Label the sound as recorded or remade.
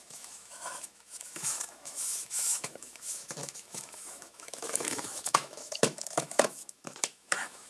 remade